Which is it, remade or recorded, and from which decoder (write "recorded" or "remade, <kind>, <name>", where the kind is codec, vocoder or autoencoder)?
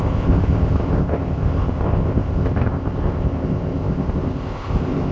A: remade, codec, ZipCodec